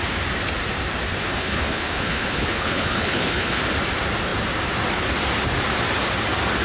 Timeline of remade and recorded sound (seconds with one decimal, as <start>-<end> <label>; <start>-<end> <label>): 0.0-1.2 recorded; 1.2-3.6 remade; 3.6-6.6 recorded